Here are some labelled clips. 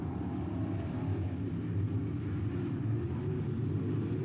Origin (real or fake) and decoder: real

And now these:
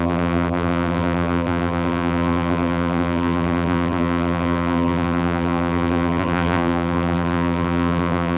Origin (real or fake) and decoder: fake, vocoder, BigVGAN v2